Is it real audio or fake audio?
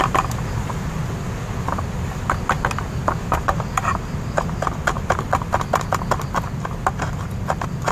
real